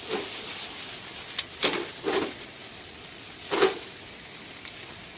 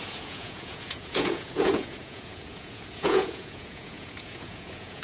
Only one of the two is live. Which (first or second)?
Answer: first